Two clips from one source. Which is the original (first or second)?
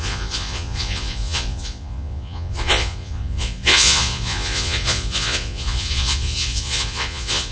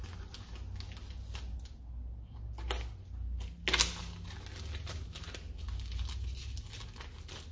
second